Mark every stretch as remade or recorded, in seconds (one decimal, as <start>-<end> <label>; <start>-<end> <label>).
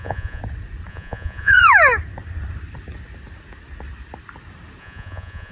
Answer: 0.0-0.4 remade; 0.4-0.9 recorded; 0.9-1.5 remade; 1.5-4.8 recorded; 4.8-5.5 remade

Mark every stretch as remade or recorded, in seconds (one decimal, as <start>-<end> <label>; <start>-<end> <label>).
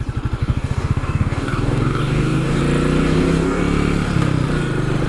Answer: 0.0-0.4 recorded; 0.4-2.6 remade; 2.6-3.0 recorded; 3.0-3.6 remade; 3.6-5.1 recorded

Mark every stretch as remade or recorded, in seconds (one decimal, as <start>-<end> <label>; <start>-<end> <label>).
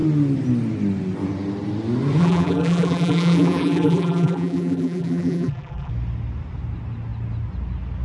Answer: 0.0-2.2 recorded; 2.2-5.9 remade; 5.9-8.0 recorded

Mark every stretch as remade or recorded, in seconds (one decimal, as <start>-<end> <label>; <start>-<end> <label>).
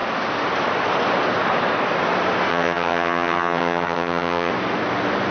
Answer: 0.0-2.5 recorded; 2.5-4.5 remade; 4.5-5.3 recorded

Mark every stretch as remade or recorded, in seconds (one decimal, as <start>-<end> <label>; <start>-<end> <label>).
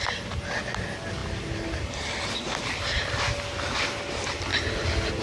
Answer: 0.0-5.2 recorded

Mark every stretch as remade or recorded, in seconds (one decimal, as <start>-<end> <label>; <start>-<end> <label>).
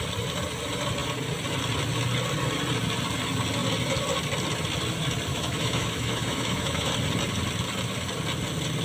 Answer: 0.0-5.3 recorded; 5.3-6.9 remade; 6.9-8.8 recorded